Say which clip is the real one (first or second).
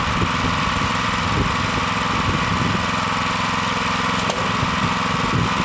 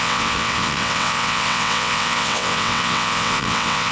first